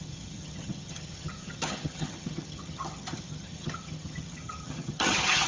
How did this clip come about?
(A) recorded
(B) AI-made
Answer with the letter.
B